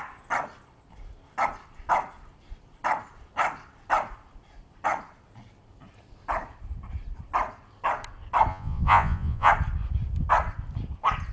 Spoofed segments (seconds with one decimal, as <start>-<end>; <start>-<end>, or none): 8.5-9.5